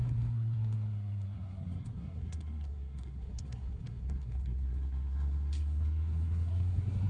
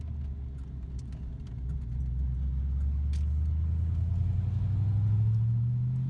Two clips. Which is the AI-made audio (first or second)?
first